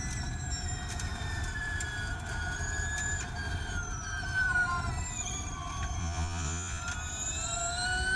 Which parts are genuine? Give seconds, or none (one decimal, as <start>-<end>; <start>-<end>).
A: 0.0-6.0; 6.8-8.2